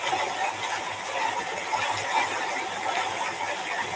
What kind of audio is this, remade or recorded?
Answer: recorded